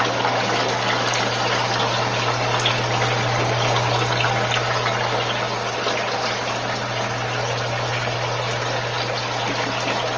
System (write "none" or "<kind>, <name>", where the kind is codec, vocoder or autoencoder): none